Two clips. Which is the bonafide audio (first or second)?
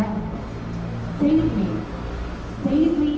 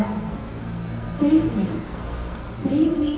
first